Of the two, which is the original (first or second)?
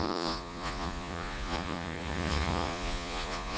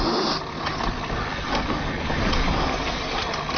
second